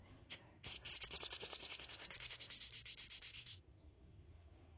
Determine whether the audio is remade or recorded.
remade